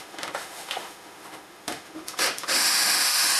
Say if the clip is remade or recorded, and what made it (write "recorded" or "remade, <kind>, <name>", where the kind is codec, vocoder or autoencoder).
remade, autoencoder, DAC-VAE